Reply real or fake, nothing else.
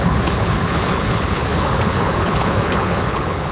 fake